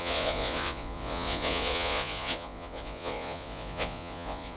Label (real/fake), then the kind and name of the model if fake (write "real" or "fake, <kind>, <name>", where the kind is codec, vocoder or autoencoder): fake, vocoder, Vocos